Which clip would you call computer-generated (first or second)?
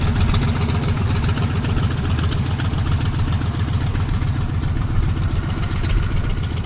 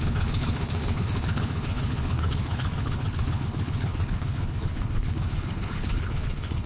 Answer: second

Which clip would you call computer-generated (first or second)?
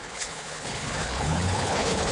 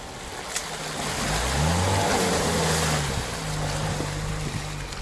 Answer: first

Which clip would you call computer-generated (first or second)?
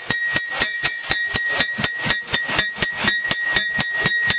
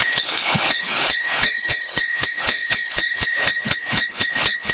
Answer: second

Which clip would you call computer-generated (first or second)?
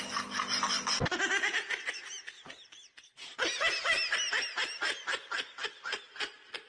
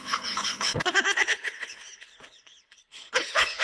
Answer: second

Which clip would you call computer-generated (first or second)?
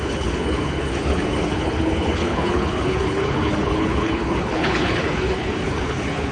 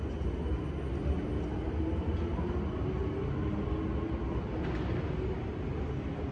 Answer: first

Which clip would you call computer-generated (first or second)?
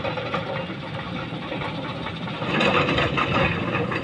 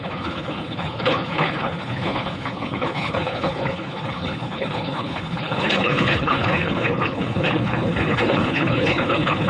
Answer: second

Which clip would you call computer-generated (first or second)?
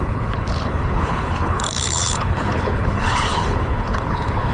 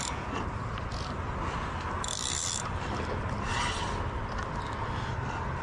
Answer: first